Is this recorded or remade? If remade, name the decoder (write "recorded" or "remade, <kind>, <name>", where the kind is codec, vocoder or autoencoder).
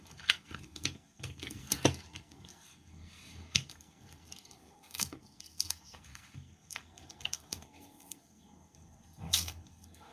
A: remade, codec, SNAC